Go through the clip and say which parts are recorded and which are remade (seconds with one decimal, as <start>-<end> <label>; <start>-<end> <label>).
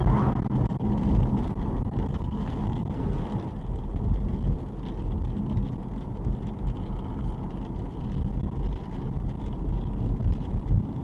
0.0-2.1 recorded; 2.1-3.2 remade; 3.2-11.0 recorded